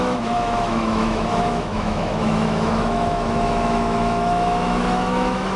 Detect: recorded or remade remade